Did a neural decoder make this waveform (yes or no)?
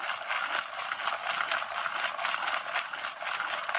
no